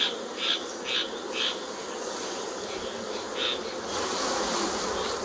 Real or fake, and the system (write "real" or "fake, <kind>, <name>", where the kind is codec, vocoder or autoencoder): real